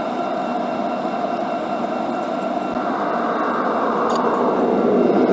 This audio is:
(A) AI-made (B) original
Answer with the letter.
B